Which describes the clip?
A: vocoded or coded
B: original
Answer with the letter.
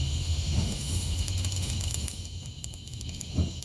A